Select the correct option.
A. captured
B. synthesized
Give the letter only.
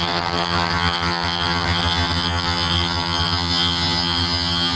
B